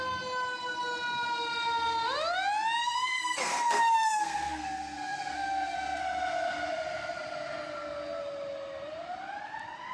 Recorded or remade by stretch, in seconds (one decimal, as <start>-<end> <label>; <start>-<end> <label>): 0.0-2.8 recorded; 2.8-6.0 remade; 6.0-9.9 recorded